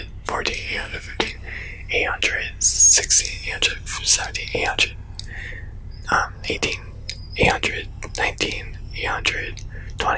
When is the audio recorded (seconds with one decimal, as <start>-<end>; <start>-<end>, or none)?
0.0-0.5; 1.3-10.2